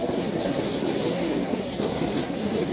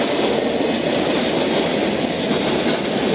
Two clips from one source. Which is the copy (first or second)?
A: first